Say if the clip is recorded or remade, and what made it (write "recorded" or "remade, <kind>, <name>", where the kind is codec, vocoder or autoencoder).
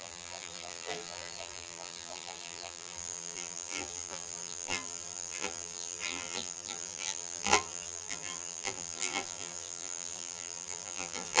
remade, vocoder, BigVGAN v2